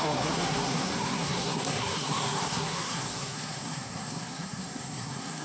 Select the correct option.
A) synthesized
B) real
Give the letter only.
A